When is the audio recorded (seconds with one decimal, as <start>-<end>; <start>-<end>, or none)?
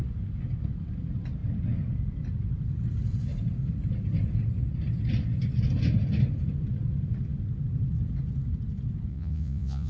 0.0-9.1